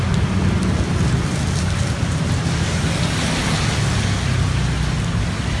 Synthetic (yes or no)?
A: no